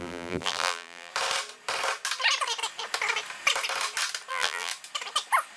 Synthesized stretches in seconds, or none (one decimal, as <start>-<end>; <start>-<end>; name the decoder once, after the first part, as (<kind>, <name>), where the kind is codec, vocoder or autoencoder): 0.0-1.1 (vocoder, BigVGAN v2); 4.3-4.7